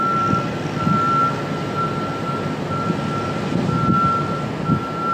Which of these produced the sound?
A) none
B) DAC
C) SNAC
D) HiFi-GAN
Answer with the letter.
A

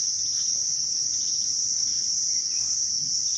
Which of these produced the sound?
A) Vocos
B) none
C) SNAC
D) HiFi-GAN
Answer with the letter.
B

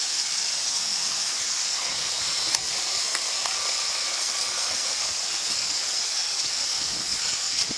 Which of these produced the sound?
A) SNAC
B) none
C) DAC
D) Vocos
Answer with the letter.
A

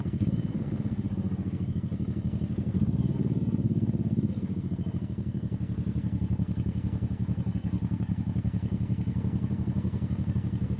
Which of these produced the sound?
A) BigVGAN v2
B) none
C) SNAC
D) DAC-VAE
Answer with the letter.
C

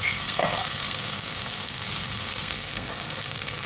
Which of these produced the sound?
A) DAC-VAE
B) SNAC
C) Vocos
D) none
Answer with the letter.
B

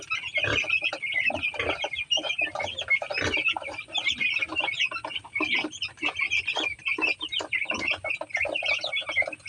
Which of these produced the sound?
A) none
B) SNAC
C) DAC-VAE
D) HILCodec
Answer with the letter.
A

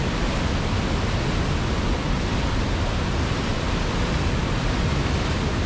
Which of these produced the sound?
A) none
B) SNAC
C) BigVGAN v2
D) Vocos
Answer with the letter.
A